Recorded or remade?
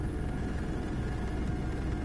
recorded